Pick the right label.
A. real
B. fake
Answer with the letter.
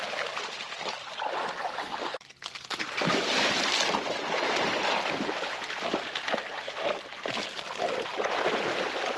A